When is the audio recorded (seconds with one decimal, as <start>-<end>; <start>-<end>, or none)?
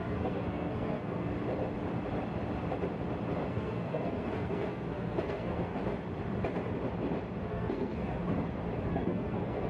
1.3-3.5; 5.8-7.5; 8.2-8.9